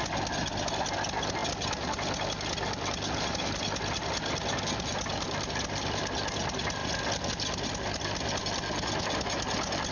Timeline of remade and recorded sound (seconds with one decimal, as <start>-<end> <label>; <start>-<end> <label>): 0.0-9.9 recorded

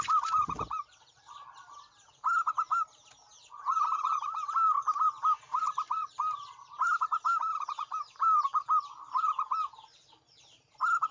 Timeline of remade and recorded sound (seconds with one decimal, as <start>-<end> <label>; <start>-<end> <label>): 0.0-2.4 remade; 2.4-3.6 recorded; 3.6-7.3 remade; 7.3-8.9 recorded; 8.9-11.1 remade

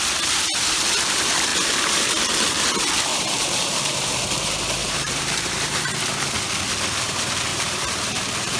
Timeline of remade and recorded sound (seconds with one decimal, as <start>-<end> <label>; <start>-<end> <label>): 0.0-3.1 recorded; 3.1-4.2 remade; 4.2-4.8 recorded; 4.8-5.9 remade; 5.9-7.5 recorded; 7.5-8.6 remade

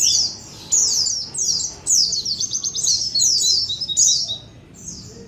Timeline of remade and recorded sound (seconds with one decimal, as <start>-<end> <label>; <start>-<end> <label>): 0.0-2.1 recorded; 2.1-3.2 remade; 3.2-5.3 recorded

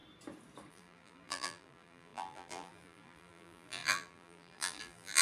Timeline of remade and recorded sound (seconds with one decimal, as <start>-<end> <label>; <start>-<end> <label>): 0.0-0.7 recorded; 0.7-5.2 remade